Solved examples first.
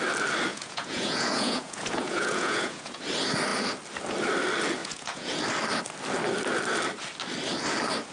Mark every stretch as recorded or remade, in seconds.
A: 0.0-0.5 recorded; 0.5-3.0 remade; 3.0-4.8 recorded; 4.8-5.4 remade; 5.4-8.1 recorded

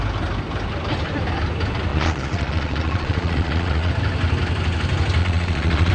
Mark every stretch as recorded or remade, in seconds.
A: 0.0-1.9 recorded; 1.9-3.9 remade; 3.9-5.2 recorded; 5.2-5.9 remade

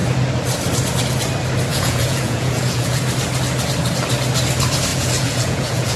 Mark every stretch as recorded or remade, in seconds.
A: 0.0-1.7 recorded; 1.7-3.0 remade; 3.0-4.9 recorded; 4.9-6.0 remade

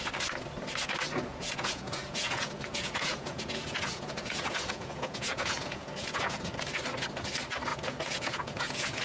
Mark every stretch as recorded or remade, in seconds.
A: 0.0-1.3 recorded; 1.3-6.4 remade; 6.4-7.7 recorded; 7.7-9.0 remade

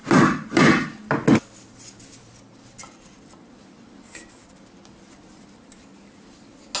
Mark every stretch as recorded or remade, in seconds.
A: 0.0-6.8 recorded